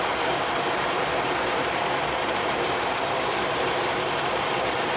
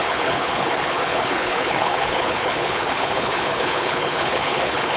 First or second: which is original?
first